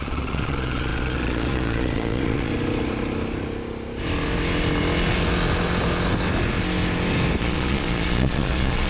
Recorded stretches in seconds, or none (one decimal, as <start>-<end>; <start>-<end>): 2.5-7.4